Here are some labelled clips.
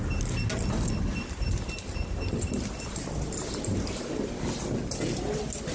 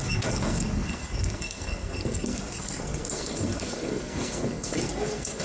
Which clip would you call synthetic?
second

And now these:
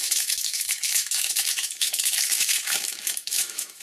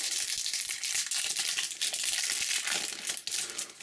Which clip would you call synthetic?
first